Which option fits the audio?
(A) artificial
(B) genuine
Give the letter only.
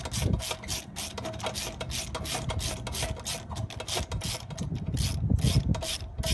B